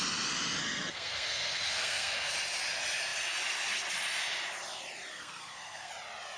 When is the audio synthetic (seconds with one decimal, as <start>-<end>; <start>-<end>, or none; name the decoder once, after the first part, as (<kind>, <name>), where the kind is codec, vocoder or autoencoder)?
0.6-2.3 (codec, SNAC); 5.1-5.9